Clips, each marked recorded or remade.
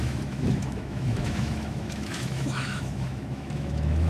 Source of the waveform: remade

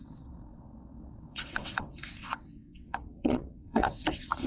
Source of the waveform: remade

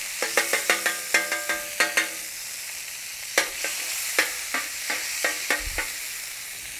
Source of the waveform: recorded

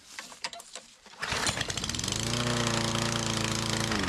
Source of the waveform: recorded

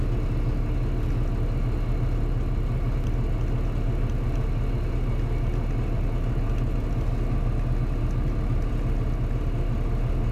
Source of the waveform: recorded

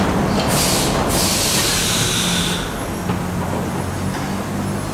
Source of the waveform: recorded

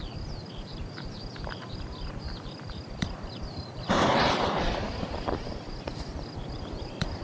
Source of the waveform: remade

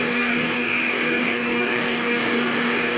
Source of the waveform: remade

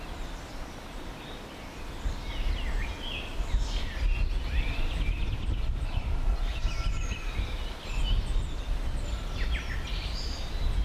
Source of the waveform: recorded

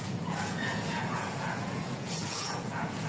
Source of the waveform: remade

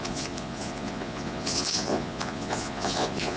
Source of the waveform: remade